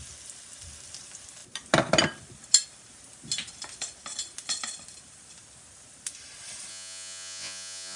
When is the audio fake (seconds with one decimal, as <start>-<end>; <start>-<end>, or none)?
6.7-8.0